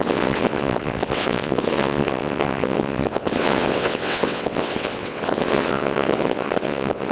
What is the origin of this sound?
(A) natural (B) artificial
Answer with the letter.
B